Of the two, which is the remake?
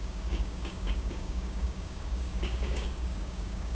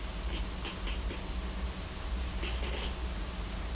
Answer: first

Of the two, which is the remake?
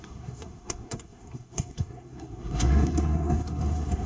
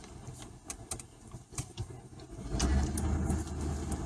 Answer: first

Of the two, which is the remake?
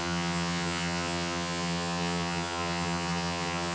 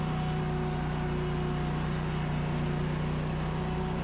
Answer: first